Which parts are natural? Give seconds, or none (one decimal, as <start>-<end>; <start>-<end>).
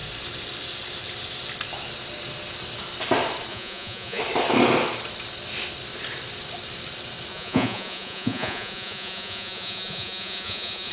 0.0-3.5; 4.2-7.3